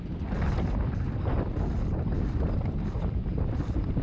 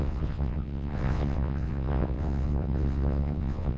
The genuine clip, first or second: first